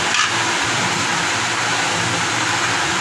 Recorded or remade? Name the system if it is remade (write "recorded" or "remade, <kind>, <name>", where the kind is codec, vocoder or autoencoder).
recorded